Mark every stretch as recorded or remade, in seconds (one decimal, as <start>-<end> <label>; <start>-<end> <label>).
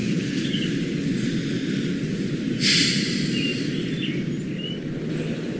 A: 0.0-5.6 recorded